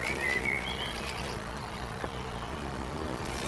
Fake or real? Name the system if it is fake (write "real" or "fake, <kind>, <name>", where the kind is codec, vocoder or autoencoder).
fake, vocoder, Vocos